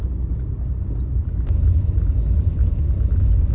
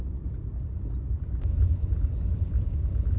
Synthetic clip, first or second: second